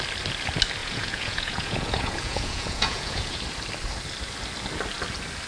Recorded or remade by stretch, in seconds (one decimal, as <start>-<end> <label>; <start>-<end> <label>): 0.0-0.8 recorded; 0.8-3.4 remade; 3.4-5.5 recorded